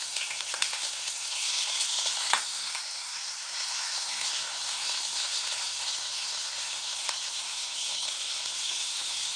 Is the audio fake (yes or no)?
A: yes